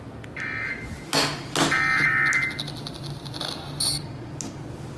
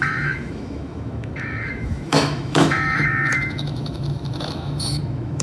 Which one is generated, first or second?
second